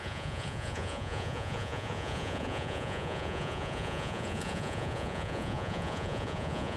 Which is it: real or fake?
fake